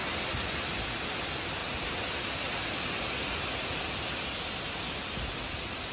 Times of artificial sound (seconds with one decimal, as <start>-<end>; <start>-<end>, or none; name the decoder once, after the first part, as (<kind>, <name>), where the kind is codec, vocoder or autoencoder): none